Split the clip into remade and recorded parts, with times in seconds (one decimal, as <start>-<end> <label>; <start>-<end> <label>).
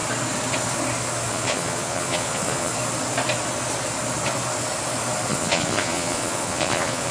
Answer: 0.0-1.3 recorded; 1.3-2.7 remade; 2.7-5.3 recorded; 5.3-7.1 remade